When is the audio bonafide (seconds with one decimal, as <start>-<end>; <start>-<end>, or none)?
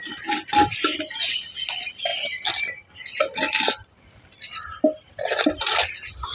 0.0-6.3